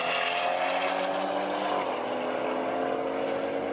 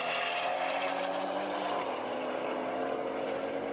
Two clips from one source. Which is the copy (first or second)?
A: second